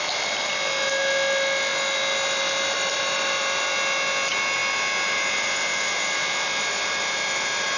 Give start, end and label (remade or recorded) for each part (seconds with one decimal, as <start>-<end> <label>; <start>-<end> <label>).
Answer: 0.0-7.8 recorded